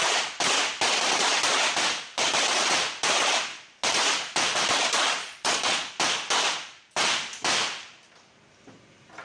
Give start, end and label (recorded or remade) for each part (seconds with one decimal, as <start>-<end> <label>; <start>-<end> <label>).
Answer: 0.0-5.2 recorded; 5.2-5.9 remade; 5.9-9.2 recorded